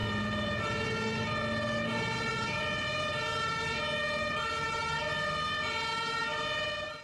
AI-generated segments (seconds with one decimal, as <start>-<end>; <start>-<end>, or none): none